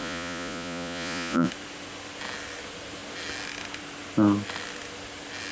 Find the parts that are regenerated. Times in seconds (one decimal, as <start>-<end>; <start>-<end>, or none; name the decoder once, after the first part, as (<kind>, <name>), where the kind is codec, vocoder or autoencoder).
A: 0.0-1.5 (vocoder, Vocos)